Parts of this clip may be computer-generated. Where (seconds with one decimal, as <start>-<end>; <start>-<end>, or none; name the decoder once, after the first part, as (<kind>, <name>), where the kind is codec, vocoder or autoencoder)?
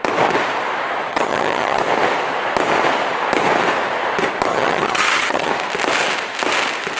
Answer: 1.1-1.8 (vocoder, HiFi-GAN); 4.5-5.5